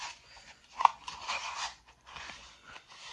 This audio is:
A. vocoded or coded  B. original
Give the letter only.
A